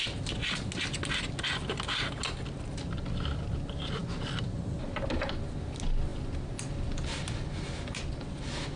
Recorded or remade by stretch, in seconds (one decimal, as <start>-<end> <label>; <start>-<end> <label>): 0.0-8.8 recorded